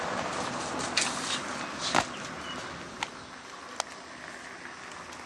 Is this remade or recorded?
recorded